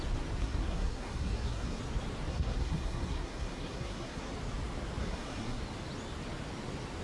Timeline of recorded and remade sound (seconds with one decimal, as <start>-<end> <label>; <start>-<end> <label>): 0.0-0.4 recorded; 0.4-1.8 remade; 1.8-2.3 recorded; 2.3-4.3 remade; 4.3-5.0 recorded; 5.0-5.6 remade; 5.6-7.0 recorded